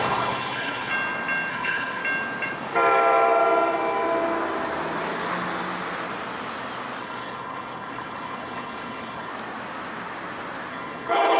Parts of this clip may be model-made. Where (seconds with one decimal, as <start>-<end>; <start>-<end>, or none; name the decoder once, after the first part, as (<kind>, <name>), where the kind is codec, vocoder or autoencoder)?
0.0-0.9 (codec, HILCodec); 1.5-2.0; 7.0-9.3; 10.7-11.4